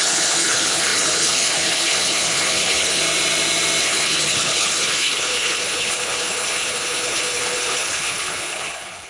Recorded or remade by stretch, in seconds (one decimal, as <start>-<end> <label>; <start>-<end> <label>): 0.0-3.0 remade; 3.0-3.8 recorded; 3.8-9.1 remade